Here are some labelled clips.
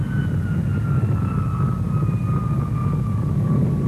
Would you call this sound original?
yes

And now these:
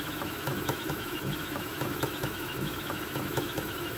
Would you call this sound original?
no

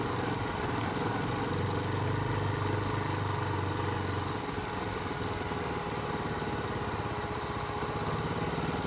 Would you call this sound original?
yes